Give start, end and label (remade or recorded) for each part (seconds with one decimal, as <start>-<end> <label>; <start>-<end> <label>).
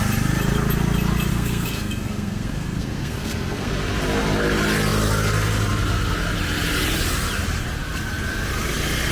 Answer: 0.0-1.3 recorded; 1.3-3.7 remade; 3.7-9.1 recorded